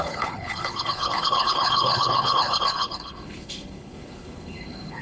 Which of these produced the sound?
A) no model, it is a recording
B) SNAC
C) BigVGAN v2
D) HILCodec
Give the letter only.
D